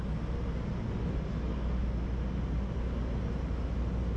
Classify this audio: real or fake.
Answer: real